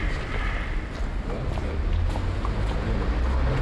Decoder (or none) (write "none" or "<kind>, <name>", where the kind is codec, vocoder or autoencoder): none